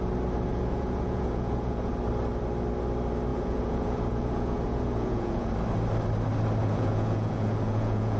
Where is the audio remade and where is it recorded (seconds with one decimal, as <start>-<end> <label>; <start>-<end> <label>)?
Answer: 0.0-0.5 recorded; 0.5-1.9 remade; 1.9-3.3 recorded; 3.3-5.5 remade; 5.5-6.6 recorded; 6.6-8.2 remade